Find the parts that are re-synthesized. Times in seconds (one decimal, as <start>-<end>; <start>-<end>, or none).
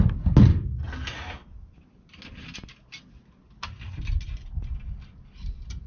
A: none